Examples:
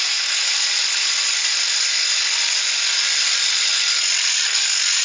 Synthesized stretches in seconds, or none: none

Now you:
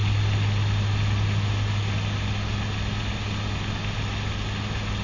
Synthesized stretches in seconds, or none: none

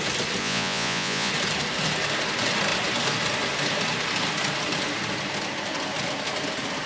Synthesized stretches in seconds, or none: 0.4-1.3 (vocoder, Vocos)

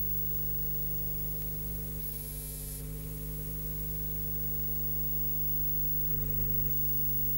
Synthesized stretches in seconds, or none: 2.0-2.8 (autoencoder, DAC-VAE); 6.1-6.7

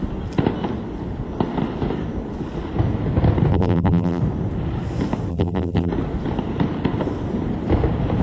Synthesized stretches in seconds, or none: 3.5-4.2 (vocoder, BigVGAN v2); 5.3-5.9

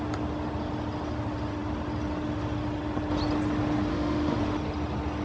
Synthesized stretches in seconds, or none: 3.9-4.4 (autoencoder, DAC-VAE)

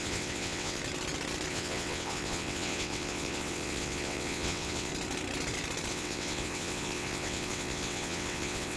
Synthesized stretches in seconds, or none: 0.0-0.8 (vocoder, WaveNeXt); 1.5-4.9; 5.9-8.8

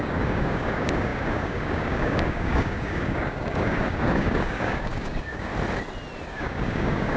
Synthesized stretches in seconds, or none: 0.0-5.5 (codec, DAC); 6.3-7.2